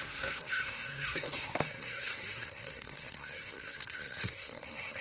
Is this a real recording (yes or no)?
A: no